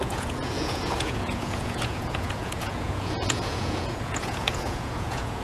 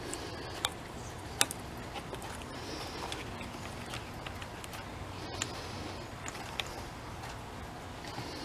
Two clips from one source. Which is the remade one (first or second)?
first